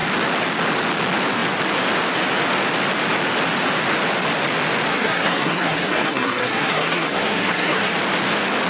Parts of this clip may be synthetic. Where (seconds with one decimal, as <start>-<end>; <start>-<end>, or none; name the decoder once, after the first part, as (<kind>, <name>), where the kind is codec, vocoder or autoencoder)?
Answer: 4.9-7.9 (codec, SNAC)